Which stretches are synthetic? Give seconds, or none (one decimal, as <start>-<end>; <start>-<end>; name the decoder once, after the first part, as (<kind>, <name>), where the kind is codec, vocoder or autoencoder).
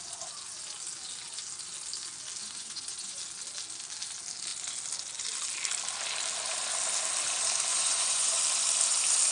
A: 2.4-3.2 (vocoder, Vocos); 7.7-8.4